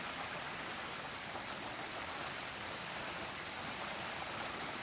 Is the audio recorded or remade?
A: recorded